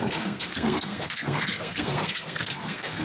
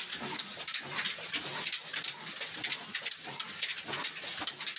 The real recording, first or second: second